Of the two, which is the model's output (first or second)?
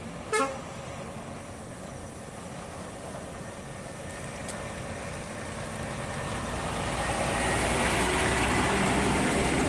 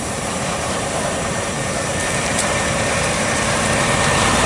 second